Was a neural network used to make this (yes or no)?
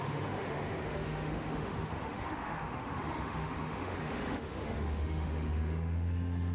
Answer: yes